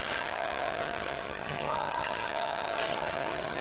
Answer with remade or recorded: remade